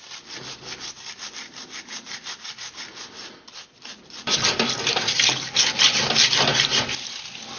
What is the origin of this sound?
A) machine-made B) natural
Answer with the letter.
B